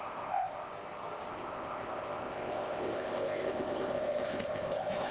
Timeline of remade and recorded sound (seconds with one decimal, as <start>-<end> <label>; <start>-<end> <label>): 0.0-0.7 remade; 0.7-1.3 recorded; 1.3-5.1 remade